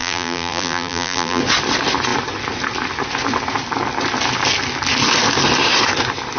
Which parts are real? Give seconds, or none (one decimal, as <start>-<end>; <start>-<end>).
1.4-6.4